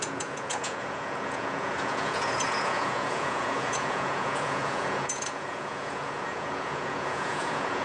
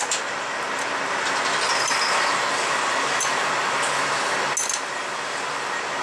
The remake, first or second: first